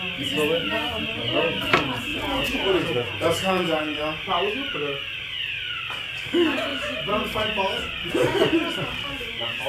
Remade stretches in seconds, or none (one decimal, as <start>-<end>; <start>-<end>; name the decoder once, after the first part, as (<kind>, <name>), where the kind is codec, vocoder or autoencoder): 2.1-4.0 (vocoder, Vocos)